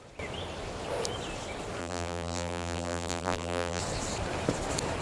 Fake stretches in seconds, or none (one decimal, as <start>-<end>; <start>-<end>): 1.8-3.8